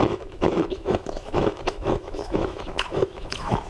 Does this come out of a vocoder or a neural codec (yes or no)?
yes